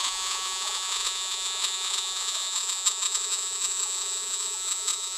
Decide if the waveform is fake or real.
fake